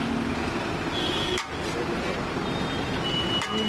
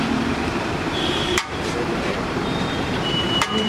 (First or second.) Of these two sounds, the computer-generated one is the second